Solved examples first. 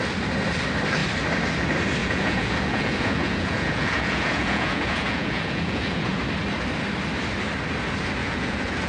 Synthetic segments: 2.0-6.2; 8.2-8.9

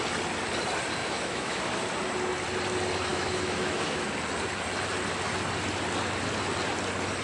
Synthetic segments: 1.0-1.6; 3.1-4.0

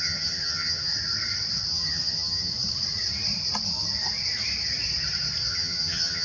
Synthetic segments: 0.0-0.9; 1.7-2.5; 5.5-6.2